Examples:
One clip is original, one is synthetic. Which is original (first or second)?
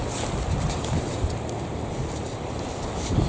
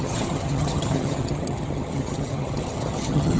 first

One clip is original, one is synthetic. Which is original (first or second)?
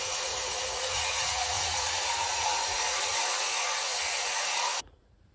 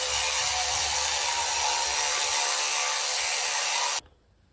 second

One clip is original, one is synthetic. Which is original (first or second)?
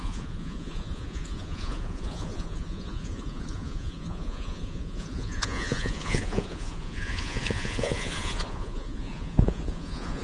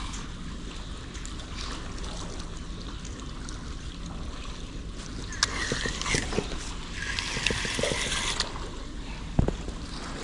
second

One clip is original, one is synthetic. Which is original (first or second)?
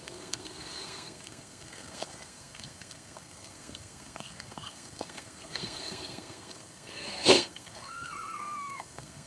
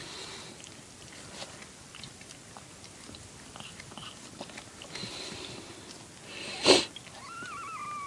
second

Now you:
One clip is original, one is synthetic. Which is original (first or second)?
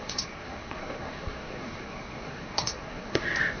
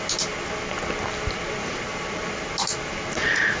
second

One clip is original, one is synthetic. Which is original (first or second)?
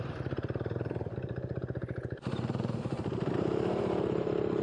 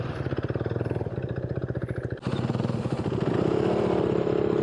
second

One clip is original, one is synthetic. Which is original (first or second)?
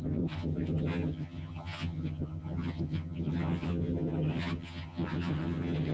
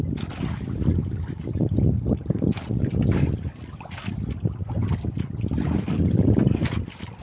second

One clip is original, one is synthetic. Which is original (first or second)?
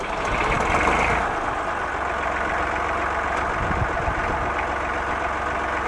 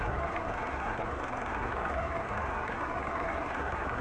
first